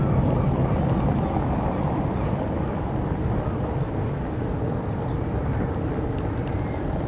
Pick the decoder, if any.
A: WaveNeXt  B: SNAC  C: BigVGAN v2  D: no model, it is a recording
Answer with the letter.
D